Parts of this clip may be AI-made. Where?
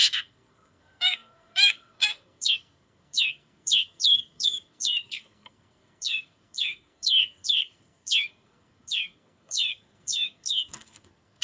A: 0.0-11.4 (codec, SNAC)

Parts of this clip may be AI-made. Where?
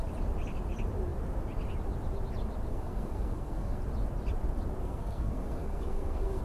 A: 2.7-3.8 (codec, SNAC); 4.8-6.4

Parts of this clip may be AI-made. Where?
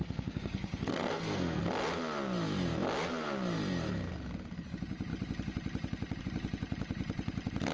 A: 0.0-1.6 (codec, SNAC)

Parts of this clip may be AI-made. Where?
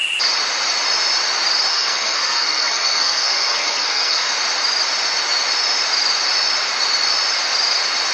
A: 1.7-4.3 (codec, SNAC)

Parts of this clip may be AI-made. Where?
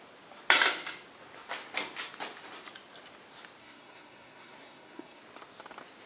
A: 3.6-5.2 (codec, SNAC)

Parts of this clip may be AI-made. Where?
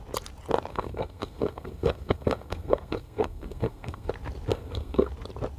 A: 0.7-4.1 (codec, SNAC); 4.5-5.1